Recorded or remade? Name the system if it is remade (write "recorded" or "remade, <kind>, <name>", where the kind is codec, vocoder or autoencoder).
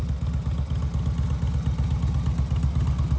recorded